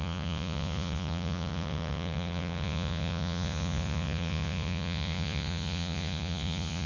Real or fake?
fake